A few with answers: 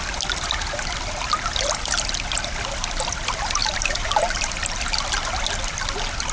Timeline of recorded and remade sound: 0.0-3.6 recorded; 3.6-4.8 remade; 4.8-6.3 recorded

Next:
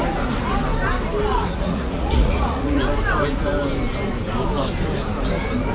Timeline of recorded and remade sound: 0.0-1.3 recorded; 1.3-2.8 remade; 2.8-5.7 recorded